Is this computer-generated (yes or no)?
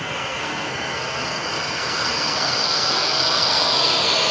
yes